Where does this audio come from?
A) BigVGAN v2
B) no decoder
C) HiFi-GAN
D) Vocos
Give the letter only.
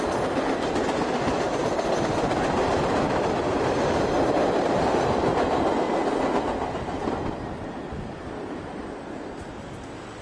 B